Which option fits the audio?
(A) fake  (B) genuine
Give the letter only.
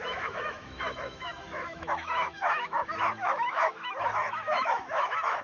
A